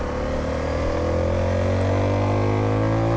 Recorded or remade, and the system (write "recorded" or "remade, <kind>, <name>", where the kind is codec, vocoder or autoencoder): recorded